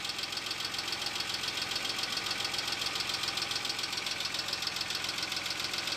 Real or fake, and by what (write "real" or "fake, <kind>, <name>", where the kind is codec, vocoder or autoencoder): real